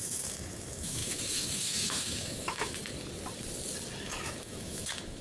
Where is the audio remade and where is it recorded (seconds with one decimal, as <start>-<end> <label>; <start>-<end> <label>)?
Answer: 0.0-2.8 remade; 2.8-4.0 recorded; 4.0-5.2 remade